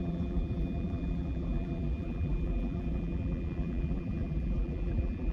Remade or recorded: remade